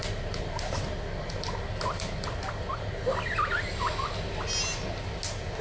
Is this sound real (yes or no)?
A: yes